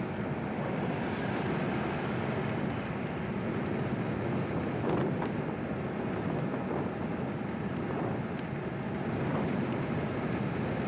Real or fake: real